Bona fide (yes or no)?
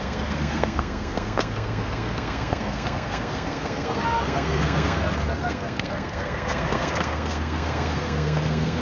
no